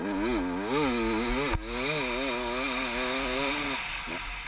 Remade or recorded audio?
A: recorded